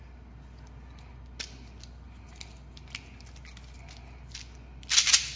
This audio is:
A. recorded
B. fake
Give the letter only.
A